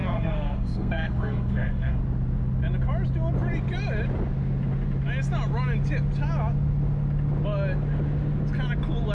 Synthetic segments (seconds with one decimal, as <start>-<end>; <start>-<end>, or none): 0.0-1.9